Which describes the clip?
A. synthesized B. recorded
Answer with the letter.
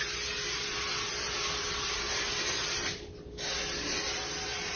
B